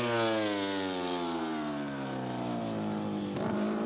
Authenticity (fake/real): real